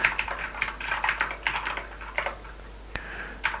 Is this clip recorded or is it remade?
recorded